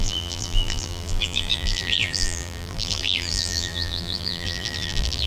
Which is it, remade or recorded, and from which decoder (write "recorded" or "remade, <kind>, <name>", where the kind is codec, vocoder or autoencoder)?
remade, vocoder, BigVGAN v2